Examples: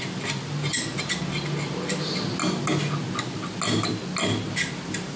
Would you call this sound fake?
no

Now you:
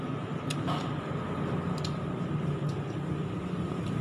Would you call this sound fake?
no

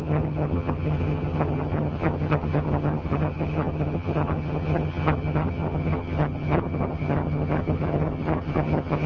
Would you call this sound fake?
yes